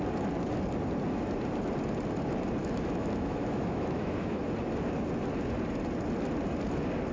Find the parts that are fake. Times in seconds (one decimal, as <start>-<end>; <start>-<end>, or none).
2.6-4.4